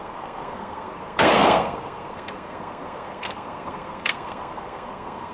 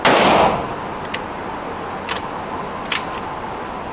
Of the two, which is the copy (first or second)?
first